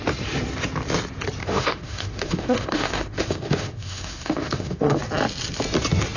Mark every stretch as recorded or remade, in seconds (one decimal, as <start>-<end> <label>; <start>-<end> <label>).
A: 0.0-1.4 recorded; 1.4-5.0 remade; 5.0-6.2 recorded